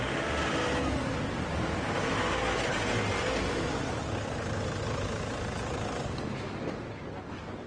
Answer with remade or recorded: recorded